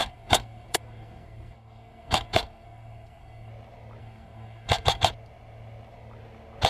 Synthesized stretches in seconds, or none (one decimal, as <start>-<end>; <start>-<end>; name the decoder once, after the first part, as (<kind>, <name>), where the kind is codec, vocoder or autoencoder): 0.0-3.5 (codec, SNAC); 4.0-5.1